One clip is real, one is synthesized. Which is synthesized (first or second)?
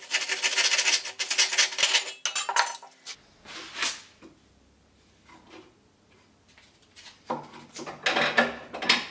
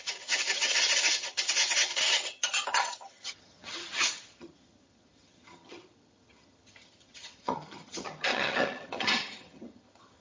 second